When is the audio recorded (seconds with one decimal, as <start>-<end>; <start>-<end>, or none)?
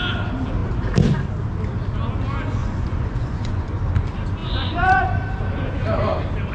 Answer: 0.0-2.6; 3.8-4.4; 5.0-6.5